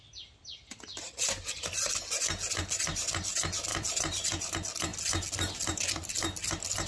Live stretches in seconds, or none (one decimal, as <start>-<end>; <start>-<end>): 0.0-0.9; 1.9-3.7; 4.5-6.9